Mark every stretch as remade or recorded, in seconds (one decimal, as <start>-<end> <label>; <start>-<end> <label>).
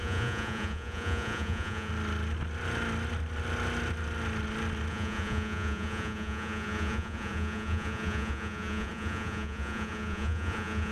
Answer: 0.0-1.9 remade; 1.9-4.9 recorded; 4.9-10.9 remade